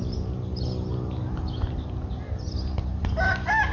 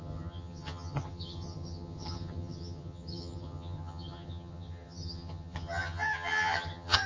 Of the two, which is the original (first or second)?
first